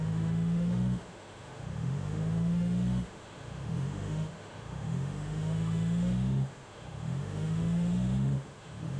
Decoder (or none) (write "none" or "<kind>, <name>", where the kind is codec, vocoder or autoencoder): autoencoder, DAC-VAE